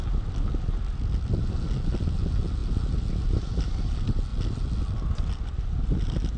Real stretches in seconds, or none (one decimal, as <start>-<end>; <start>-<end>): 0.0-6.4